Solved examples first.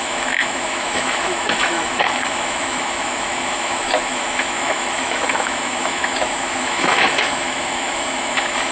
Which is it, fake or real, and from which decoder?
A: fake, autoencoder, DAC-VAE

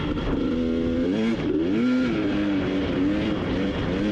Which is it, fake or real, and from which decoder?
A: real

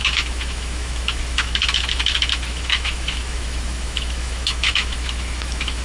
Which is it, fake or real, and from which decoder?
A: fake, autoencoder, DAC-VAE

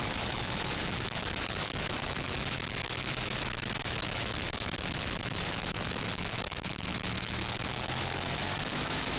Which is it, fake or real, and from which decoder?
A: fake, autoencoder, DAC-VAE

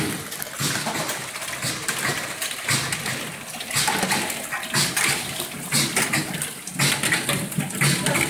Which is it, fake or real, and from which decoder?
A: real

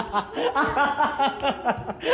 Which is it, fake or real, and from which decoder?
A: real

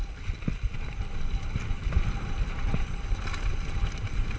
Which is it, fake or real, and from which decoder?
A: real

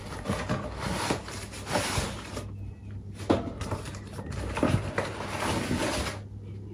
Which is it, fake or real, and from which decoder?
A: real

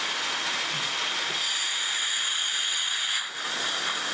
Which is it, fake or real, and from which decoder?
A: real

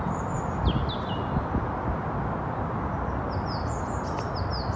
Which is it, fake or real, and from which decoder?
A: real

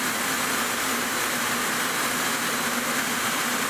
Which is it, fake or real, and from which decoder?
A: real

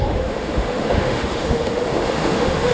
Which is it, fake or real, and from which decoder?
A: fake, autoencoder, DAC-VAE